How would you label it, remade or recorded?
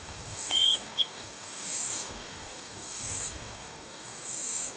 remade